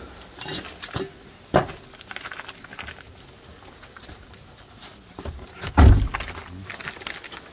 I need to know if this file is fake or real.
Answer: real